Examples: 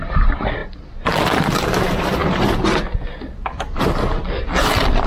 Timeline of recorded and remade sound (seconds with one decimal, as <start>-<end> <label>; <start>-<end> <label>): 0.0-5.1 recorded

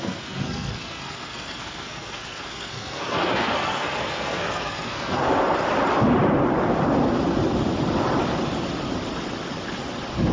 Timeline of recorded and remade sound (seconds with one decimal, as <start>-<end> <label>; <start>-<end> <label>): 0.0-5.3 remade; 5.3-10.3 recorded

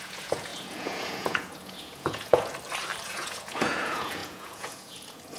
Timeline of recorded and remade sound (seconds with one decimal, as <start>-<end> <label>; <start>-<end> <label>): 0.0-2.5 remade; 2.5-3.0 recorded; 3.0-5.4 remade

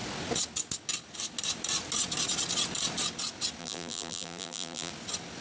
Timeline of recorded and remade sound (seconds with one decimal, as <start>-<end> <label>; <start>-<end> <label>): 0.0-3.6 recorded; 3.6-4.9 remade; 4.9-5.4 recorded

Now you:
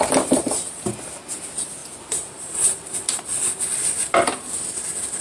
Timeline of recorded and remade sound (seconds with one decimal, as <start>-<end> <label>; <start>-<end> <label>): 0.0-5.2 recorded

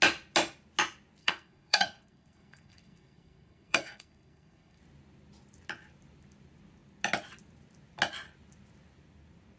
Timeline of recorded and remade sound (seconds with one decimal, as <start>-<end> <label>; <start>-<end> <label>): 0.0-1.2 recorded; 1.2-4.8 remade; 4.8-9.6 recorded